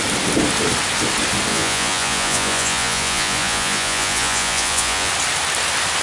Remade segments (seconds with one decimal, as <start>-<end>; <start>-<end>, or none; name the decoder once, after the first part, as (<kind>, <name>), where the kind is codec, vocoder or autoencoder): 1.5-5.1 (vocoder, Vocos)